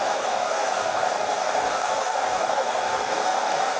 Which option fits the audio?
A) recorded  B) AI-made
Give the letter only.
B